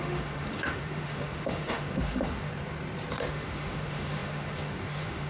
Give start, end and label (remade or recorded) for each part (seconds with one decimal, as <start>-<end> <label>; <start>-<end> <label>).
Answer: 0.0-2.5 remade; 2.5-3.3 recorded; 3.3-5.3 remade